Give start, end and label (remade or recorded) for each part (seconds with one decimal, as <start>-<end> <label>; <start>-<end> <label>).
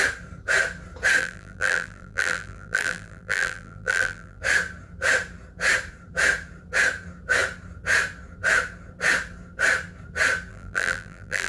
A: 0.0-1.2 recorded; 1.2-4.4 remade; 4.4-10.5 recorded; 10.5-11.5 remade